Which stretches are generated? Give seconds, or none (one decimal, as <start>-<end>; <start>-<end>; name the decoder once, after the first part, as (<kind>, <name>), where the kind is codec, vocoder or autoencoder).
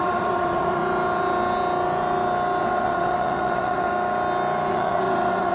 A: 0.0-0.8 (vocoder, WaveNeXt); 2.6-3.9; 4.7-5.5